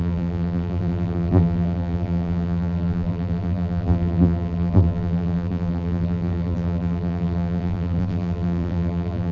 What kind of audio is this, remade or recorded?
remade